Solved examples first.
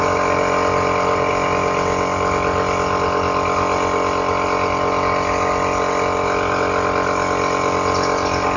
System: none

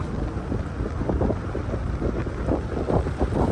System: none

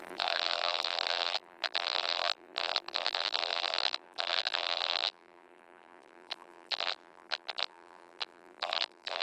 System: vocoder, BigVGAN v2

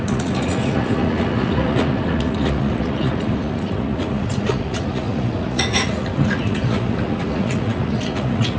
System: vocoder, Vocos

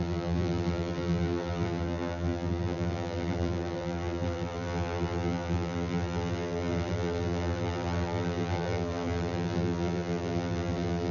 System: vocoder, BigVGAN v2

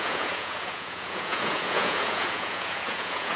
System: vocoder, Vocos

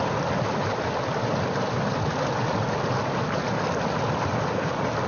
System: none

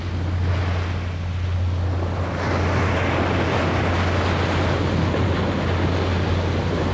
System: none